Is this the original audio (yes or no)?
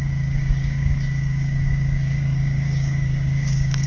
no